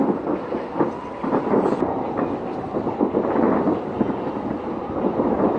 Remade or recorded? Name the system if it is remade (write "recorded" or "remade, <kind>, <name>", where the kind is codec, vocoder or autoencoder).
recorded